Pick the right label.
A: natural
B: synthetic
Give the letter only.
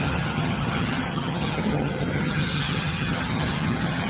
B